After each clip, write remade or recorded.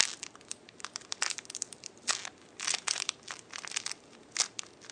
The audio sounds recorded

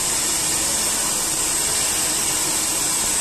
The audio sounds recorded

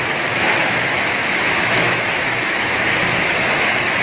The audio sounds remade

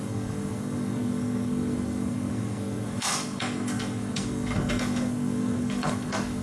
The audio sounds remade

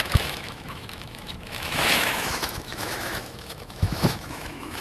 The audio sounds remade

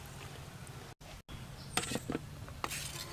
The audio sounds recorded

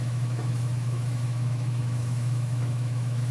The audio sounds remade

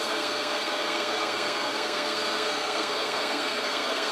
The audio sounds remade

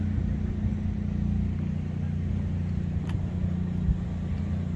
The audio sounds recorded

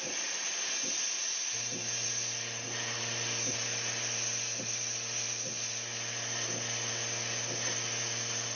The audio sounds recorded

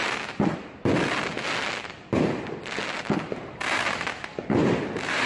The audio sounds recorded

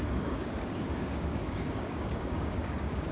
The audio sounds remade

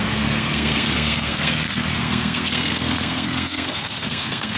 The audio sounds remade